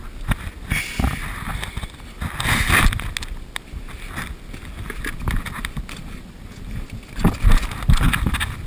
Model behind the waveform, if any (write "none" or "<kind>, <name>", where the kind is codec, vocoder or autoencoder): none